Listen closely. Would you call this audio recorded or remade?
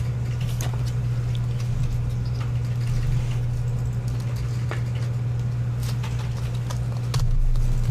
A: recorded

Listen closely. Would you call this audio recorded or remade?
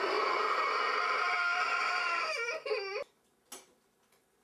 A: recorded